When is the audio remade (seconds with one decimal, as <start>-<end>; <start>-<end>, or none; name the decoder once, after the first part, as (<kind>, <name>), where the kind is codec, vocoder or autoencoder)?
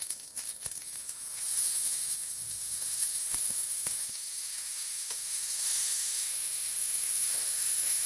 0.0-8.1 (autoencoder, DAC-VAE)